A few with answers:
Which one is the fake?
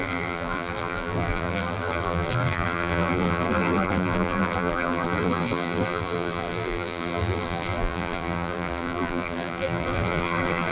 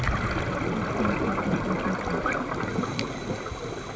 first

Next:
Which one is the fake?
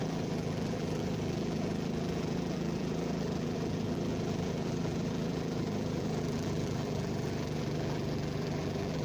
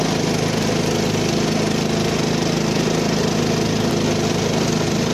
first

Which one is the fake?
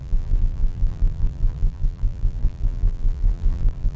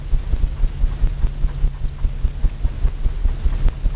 first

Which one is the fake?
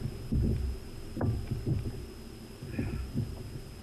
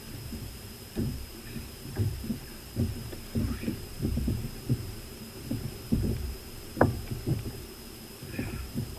second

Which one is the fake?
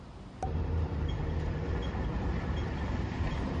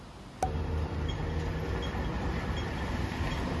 first